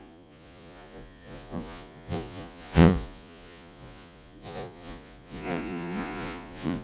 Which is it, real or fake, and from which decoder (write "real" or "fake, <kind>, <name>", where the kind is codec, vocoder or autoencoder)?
fake, vocoder, Vocos